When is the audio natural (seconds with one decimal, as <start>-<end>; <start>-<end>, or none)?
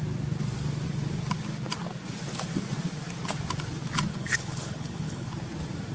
0.0-4.1; 5.3-5.9